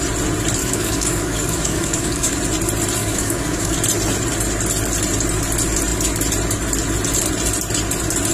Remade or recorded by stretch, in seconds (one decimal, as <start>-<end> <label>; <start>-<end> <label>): 0.0-0.6 recorded; 0.6-2.4 remade; 2.4-3.0 recorded; 3.0-3.7 remade; 3.7-8.3 recorded